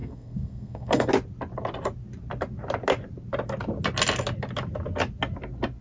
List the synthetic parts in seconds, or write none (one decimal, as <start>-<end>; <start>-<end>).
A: 0.0-1.1